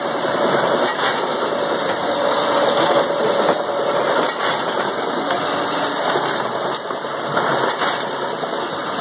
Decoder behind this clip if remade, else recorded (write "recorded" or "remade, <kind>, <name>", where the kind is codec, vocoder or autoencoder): recorded